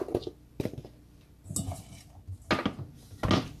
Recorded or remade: recorded